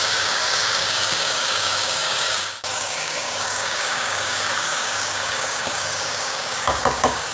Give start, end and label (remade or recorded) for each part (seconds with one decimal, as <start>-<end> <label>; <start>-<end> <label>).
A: 0.0-7.3 remade